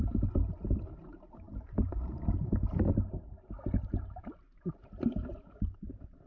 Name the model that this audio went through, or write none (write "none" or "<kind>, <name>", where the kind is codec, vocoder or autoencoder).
vocoder, BigVGAN v2